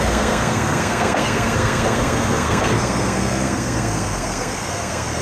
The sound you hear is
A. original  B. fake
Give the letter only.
B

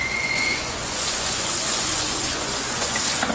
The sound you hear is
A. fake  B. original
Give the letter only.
A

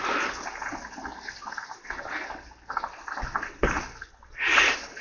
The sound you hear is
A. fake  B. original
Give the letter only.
B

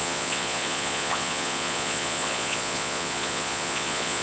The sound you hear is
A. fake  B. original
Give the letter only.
A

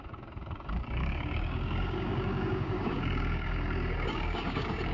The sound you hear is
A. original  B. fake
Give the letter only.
B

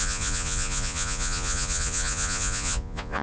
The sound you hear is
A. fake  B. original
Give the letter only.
A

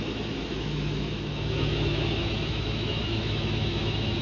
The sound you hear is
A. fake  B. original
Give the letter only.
A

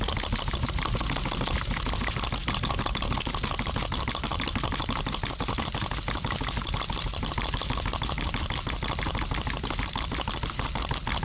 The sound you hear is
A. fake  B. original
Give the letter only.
B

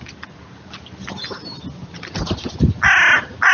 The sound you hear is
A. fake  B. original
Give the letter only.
B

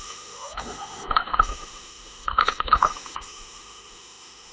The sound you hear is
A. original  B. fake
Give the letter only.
B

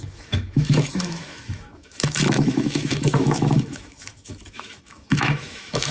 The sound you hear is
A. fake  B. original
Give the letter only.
A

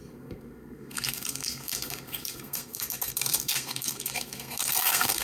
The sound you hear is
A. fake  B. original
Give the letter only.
A